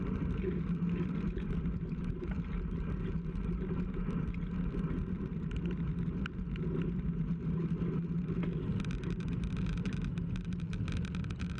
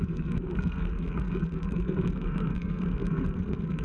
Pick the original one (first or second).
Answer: first